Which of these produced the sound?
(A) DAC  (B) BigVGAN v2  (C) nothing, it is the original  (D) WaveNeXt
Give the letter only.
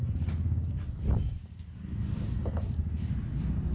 C